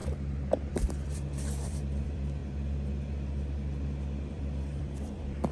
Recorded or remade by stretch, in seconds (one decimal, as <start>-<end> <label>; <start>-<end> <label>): 0.0-2.4 remade; 2.4-4.3 recorded; 4.3-5.5 remade